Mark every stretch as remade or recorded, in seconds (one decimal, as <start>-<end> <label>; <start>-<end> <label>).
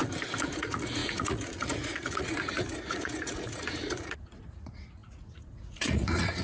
0.0-0.5 recorded; 0.5-6.4 remade